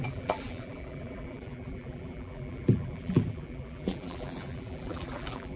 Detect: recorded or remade remade